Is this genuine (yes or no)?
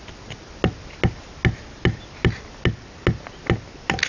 yes